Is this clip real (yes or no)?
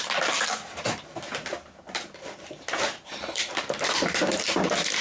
no